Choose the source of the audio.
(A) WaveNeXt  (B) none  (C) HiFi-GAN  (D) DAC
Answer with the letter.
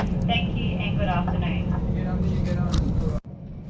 B